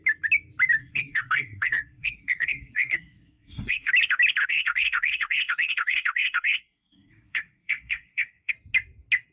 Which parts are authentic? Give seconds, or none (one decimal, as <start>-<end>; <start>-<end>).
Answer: 0.0-0.8; 3.9-4.4; 8.5-9.3